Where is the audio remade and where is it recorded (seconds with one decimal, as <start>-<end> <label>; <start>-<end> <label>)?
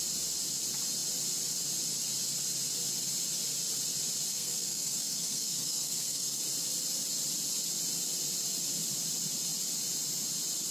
0.0-4.3 recorded; 4.3-6.4 remade; 6.4-10.7 recorded